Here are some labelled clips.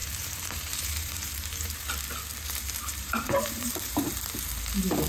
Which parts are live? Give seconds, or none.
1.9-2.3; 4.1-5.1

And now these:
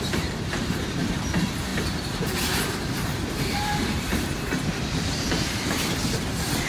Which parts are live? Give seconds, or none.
none

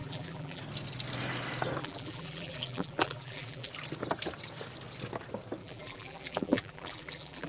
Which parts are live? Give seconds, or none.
0.6-1.8; 3.7-5.6

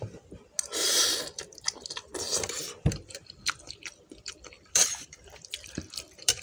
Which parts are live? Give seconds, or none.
0.0-2.3

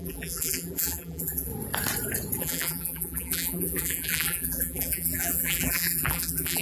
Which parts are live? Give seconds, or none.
1.5-2.4

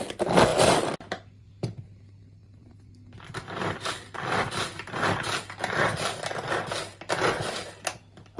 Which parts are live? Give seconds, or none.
0.0-0.5; 2.0-2.4; 6.3-8.4

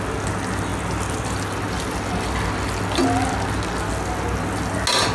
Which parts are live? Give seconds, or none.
0.0-5.1